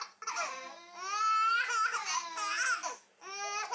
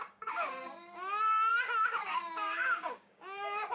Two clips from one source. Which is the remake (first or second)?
second